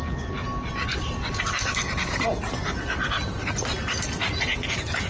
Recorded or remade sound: recorded